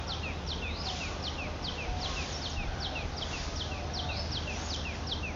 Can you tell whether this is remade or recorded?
recorded